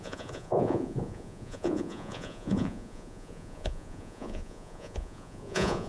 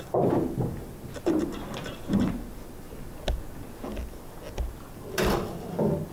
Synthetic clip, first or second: first